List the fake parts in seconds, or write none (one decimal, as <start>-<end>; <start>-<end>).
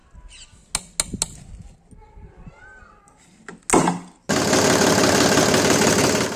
none